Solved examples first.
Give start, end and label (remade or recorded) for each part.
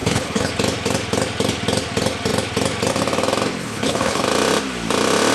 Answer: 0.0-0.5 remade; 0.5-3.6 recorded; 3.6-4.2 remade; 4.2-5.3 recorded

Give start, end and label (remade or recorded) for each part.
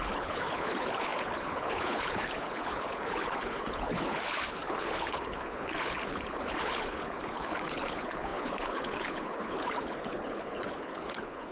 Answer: 0.0-11.5 remade